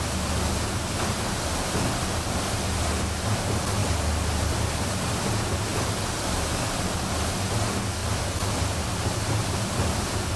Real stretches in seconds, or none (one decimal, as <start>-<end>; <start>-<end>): 0.0-5.7; 6.9-8.0